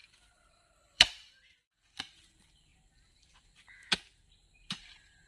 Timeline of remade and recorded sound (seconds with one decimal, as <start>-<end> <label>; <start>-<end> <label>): 0.0-2.7 remade; 2.7-4.6 recorded; 4.6-5.3 remade